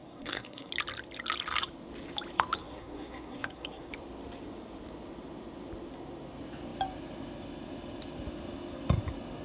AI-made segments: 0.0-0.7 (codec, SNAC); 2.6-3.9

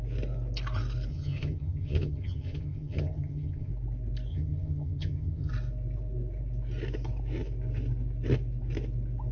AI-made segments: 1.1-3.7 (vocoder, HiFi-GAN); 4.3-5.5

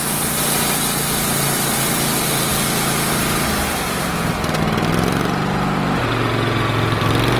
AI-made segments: none